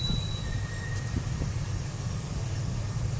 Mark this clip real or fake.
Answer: fake